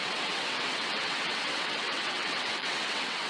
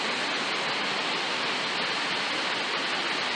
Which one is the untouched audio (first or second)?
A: second